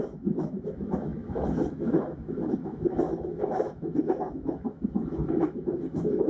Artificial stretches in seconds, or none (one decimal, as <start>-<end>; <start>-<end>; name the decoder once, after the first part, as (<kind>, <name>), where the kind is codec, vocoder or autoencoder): 0.0-6.3 (autoencoder, DAC-VAE)

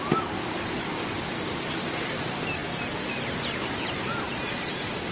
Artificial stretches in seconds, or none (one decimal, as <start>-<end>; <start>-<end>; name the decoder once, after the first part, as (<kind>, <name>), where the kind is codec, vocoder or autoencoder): none

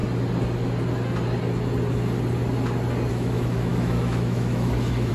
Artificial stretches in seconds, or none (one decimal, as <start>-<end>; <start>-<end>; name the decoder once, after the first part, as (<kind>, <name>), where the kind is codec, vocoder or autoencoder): 3.1-5.1 (autoencoder, DAC-VAE)